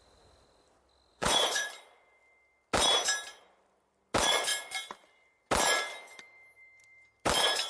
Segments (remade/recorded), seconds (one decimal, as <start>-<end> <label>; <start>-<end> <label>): 0.0-1.1 recorded; 1.1-1.8 remade; 1.8-7.7 recorded